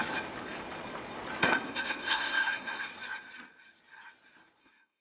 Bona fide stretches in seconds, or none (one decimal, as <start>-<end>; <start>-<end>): 0.0-1.4; 2.9-4.6

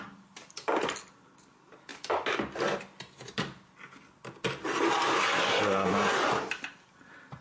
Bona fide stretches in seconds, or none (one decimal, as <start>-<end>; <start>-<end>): 0.0-7.4

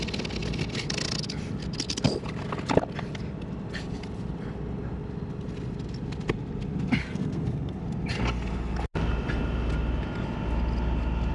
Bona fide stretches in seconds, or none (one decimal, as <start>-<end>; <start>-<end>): 0.0-7.0; 7.8-11.3

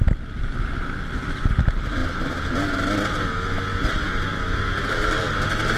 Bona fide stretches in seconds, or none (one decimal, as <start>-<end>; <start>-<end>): 0.0-5.8

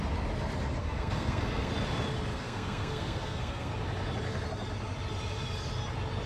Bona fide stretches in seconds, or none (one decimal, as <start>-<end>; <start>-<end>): 0.0-0.8; 1.7-2.3; 3.7-6.3

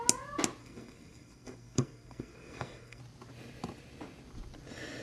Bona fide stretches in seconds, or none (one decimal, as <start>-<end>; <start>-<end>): 0.0-0.6; 3.0-5.0